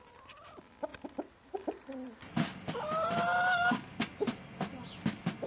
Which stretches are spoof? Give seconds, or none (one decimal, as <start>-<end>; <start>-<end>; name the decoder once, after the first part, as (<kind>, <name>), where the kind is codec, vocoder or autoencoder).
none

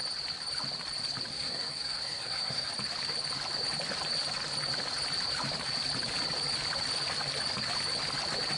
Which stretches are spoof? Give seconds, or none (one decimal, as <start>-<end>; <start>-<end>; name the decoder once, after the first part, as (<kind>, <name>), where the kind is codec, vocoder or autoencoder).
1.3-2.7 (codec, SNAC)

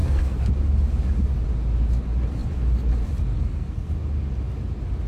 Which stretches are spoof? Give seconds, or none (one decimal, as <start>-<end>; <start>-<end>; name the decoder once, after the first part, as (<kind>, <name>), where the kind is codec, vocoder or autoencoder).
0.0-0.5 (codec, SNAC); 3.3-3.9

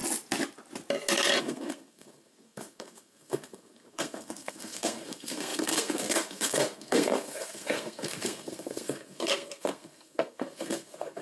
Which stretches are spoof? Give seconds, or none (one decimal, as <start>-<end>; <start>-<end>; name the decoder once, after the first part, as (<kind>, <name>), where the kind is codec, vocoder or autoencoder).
1.4-11.2 (codec, SNAC)

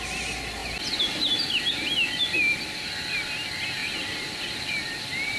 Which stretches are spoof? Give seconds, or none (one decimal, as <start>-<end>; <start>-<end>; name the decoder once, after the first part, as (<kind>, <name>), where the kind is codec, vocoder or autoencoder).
none

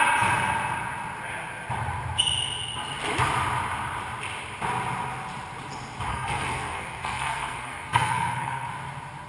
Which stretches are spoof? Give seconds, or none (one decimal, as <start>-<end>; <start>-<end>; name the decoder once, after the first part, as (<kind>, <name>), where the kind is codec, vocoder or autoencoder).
6.1-8.7 (codec, SNAC)

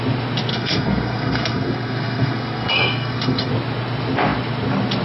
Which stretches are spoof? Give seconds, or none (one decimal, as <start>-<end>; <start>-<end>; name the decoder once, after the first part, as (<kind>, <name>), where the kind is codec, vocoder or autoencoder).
0.5-3.5 (codec, SNAC)

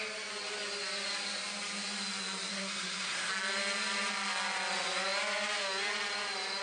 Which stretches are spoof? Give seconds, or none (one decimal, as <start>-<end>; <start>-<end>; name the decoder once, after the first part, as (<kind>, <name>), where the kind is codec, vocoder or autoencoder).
2.5-3.3 (codec, SNAC)